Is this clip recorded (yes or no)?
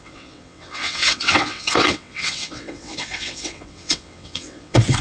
no